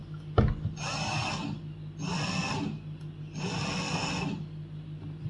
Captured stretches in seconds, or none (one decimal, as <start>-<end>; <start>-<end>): 0.0-5.3